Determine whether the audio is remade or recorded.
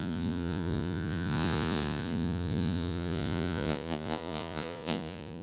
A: remade